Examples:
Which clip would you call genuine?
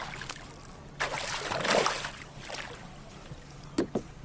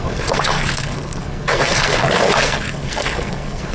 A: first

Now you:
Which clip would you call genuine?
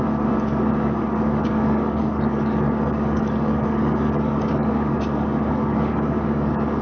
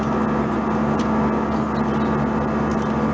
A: second